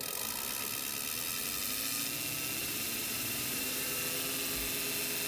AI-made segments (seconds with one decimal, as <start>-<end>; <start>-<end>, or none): 2.6-4.0